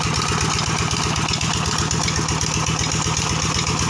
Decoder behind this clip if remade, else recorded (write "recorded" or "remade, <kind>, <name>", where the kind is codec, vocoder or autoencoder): recorded